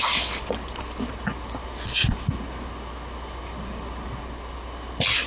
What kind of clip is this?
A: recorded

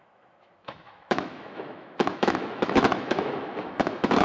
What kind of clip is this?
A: remade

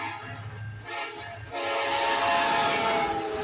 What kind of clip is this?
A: recorded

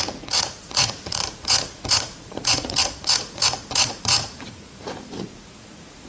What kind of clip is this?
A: remade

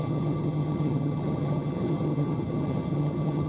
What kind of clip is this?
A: remade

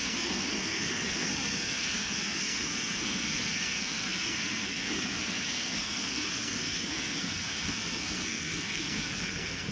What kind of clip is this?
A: remade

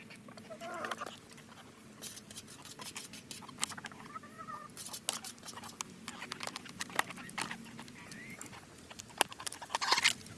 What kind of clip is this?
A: recorded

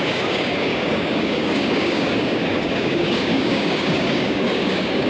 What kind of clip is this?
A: remade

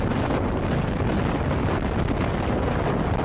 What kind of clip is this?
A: recorded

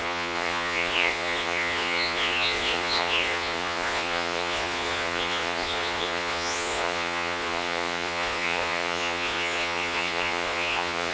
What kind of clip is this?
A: remade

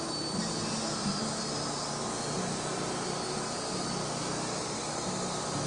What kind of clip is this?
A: recorded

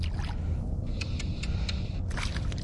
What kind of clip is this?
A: recorded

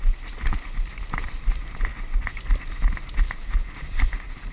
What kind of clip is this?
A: recorded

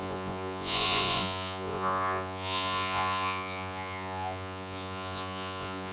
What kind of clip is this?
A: remade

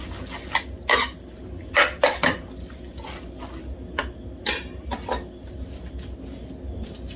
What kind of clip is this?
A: recorded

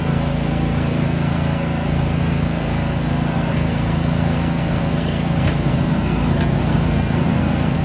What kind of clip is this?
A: remade